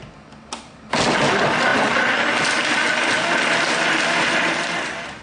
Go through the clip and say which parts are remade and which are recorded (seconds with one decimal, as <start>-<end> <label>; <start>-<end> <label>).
0.0-5.2 recorded